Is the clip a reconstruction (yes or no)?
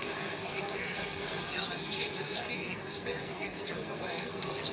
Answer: yes